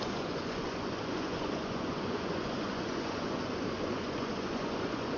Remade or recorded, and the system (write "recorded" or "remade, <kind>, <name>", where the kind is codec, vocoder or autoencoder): remade, vocoder, Vocos